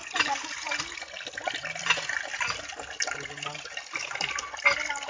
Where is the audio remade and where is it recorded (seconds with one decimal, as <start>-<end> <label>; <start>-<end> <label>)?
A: 0.0-5.1 recorded